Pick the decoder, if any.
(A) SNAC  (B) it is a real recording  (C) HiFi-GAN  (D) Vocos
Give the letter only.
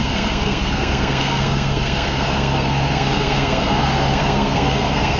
A